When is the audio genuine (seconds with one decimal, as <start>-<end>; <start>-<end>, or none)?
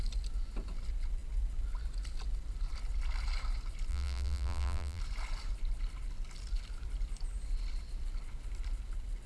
0.0-3.9; 5.0-9.3